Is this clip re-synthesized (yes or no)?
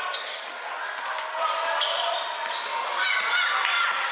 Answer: no